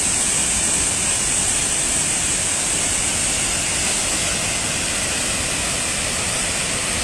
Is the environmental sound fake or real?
real